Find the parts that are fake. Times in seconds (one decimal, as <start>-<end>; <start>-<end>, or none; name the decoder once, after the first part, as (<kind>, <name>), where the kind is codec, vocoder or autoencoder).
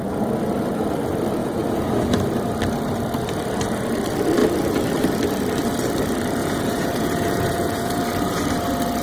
1.4-2.0 (vocoder, Vocos); 6.4-8.0